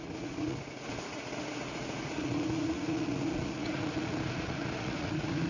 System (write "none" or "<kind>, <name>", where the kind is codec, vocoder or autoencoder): vocoder, Vocos